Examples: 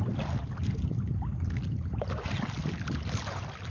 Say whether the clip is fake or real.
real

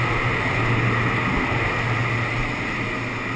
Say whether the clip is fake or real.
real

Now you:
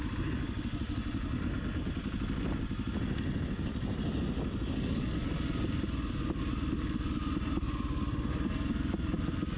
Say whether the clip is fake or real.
real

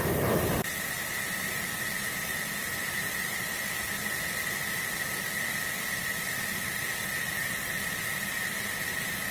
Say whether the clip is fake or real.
fake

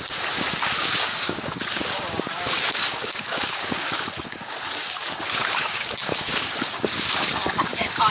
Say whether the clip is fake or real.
fake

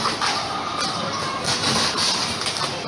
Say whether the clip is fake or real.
real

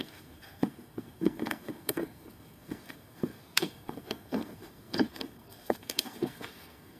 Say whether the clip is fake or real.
fake